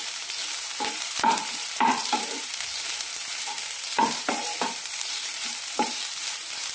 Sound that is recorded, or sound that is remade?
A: remade